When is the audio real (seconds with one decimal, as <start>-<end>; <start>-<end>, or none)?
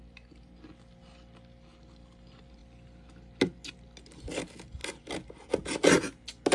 0.0-6.5